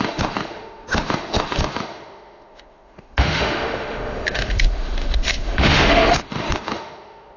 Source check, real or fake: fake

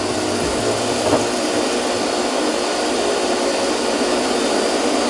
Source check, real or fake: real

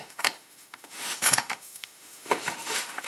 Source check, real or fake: fake